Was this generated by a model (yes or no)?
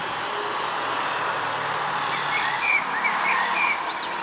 no